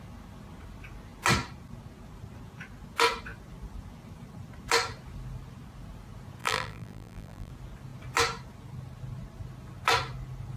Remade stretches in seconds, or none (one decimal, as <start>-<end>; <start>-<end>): 6.4-7.5